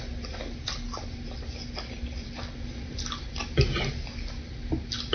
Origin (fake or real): real